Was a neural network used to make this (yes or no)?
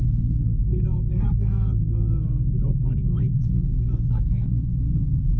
yes